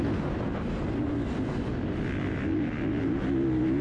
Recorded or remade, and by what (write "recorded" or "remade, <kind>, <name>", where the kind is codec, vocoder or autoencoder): recorded